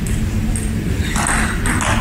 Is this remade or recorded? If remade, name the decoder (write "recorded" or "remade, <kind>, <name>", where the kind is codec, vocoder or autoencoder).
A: recorded